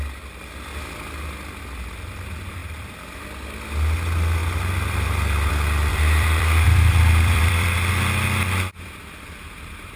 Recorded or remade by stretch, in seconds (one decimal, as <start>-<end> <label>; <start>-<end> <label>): 0.0-4.4 recorded; 4.4-5.5 remade; 5.5-5.9 recorded; 5.9-7.9 remade; 7.9-10.0 recorded